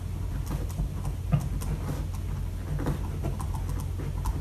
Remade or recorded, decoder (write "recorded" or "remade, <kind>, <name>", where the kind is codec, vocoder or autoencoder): recorded